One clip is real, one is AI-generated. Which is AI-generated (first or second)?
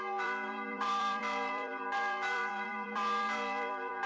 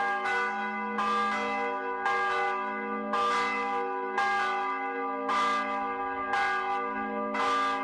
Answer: first